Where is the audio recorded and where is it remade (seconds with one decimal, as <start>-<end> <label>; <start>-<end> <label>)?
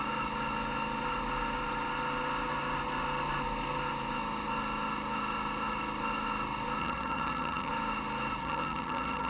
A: 0.0-6.8 recorded; 6.8-7.7 remade; 7.7-8.4 recorded; 8.4-9.3 remade